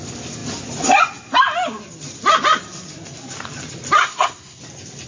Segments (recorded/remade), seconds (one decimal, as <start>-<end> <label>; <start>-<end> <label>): 0.0-4.0 recorded; 4.0-4.6 remade; 4.6-5.1 recorded